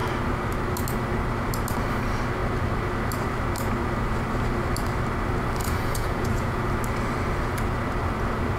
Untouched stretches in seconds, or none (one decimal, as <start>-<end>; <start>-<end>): 0.0-5.6; 6.7-8.6